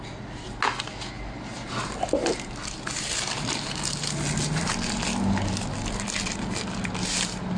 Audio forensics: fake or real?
real